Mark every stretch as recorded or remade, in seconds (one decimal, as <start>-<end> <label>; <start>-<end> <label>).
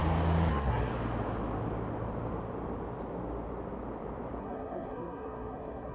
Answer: 0.0-0.5 recorded; 0.5-0.9 remade; 0.9-4.4 recorded; 4.4-5.9 remade